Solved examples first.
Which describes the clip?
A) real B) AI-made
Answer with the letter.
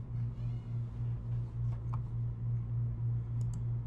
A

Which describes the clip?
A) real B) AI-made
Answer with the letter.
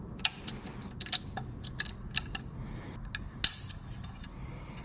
A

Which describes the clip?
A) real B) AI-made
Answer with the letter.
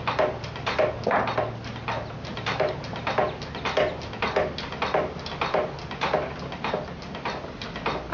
A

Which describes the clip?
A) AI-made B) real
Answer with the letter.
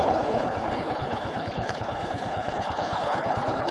A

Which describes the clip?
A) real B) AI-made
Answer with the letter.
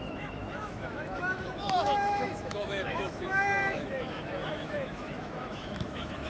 B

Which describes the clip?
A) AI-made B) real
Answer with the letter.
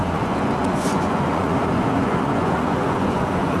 A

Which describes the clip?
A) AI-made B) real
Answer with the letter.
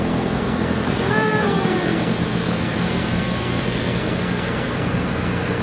A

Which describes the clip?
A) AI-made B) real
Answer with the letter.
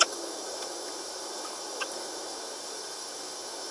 A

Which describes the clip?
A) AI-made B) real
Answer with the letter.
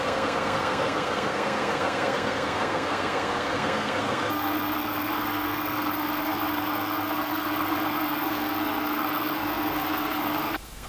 A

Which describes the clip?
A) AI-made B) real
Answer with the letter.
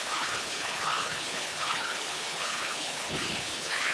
A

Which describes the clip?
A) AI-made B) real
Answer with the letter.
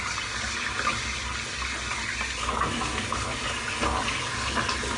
B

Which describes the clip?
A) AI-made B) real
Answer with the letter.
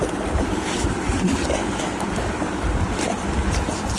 B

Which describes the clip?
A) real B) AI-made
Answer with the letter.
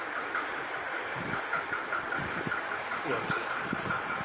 A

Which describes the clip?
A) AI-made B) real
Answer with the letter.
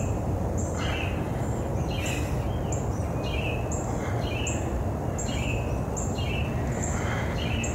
B